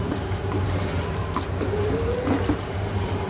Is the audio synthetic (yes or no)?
no